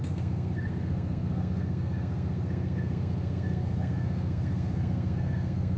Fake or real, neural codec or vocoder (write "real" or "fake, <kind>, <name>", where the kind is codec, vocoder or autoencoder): fake, codec, SNAC